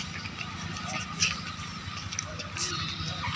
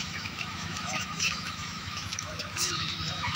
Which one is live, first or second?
first